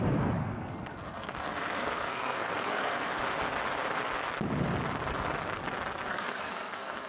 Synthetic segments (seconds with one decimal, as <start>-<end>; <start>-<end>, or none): 0.4-3.1; 6.1-7.1